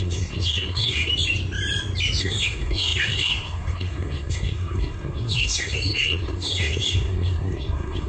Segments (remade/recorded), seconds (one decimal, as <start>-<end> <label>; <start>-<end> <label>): 0.0-1.1 remade; 1.1-2.2 recorded; 2.2-8.1 remade